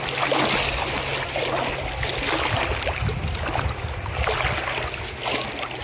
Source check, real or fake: real